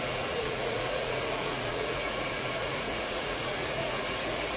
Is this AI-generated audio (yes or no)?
yes